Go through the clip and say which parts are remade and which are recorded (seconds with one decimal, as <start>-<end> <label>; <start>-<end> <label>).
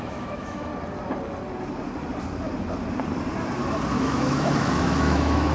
0.0-0.7 remade; 0.7-4.0 recorded; 4.0-5.5 remade